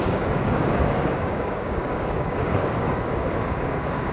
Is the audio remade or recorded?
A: remade